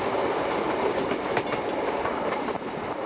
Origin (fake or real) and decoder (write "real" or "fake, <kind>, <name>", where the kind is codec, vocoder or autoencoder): real